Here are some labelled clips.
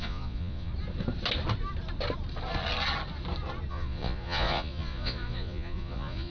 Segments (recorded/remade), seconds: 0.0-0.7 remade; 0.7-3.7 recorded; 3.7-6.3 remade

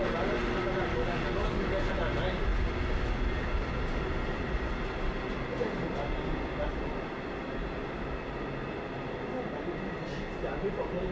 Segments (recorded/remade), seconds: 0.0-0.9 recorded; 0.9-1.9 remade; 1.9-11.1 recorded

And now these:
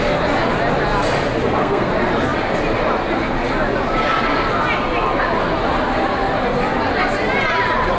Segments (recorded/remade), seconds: 0.0-1.4 recorded; 1.4-1.9 remade; 1.9-8.0 recorded

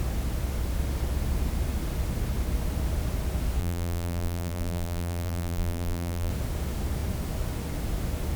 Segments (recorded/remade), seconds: 0.0-3.6 recorded; 3.6-6.3 remade; 6.3-8.4 recorded

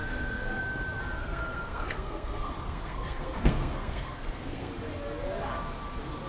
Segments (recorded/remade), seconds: 0.0-0.6 remade; 0.6-1.2 recorded; 1.2-4.7 remade; 4.7-6.3 recorded

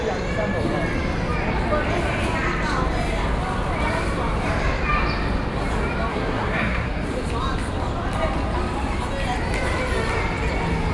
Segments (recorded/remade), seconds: 0.0-6.1 recorded; 6.1-7.1 remade; 7.1-10.9 recorded

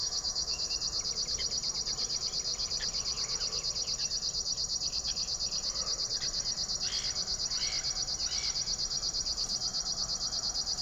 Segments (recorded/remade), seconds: 0.0-0.7 remade; 0.7-10.8 recorded